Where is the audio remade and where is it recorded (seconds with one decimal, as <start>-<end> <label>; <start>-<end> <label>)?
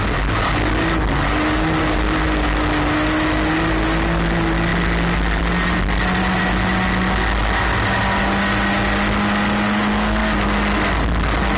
0.0-11.6 recorded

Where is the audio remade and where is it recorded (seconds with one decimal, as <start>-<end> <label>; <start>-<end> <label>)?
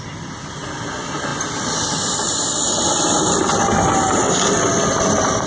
0.0-5.5 recorded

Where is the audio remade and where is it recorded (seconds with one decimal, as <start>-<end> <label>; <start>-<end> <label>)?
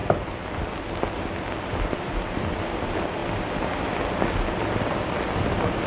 0.0-2.4 recorded; 2.4-3.2 remade; 3.2-4.8 recorded; 4.8-5.9 remade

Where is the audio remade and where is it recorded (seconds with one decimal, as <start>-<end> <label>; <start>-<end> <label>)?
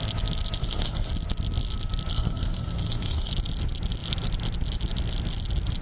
0.0-0.6 recorded; 0.6-1.1 remade; 1.1-2.1 recorded; 2.1-3.3 remade; 3.3-5.8 recorded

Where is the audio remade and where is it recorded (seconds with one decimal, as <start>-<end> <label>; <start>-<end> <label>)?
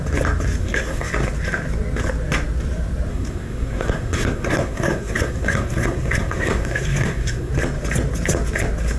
0.0-0.6 recorded; 0.6-1.1 remade; 1.1-3.1 recorded; 3.1-7.5 remade; 7.5-9.0 recorded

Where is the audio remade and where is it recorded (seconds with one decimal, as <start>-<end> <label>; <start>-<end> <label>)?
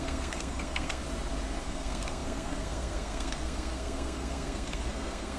0.0-1.0 remade; 1.0-1.6 recorded; 1.6-5.4 remade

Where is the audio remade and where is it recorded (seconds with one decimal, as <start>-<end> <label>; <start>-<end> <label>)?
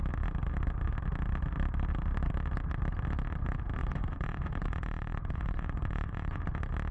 0.0-3.8 recorded; 3.8-6.4 remade; 6.4-6.9 recorded